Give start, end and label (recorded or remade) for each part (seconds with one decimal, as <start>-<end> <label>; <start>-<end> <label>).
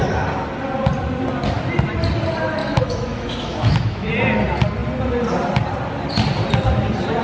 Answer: 0.0-2.6 recorded; 2.6-4.1 remade; 4.1-7.2 recorded